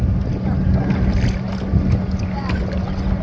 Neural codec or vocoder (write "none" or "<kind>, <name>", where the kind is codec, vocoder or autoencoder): none